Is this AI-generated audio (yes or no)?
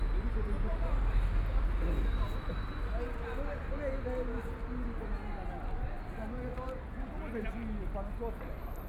no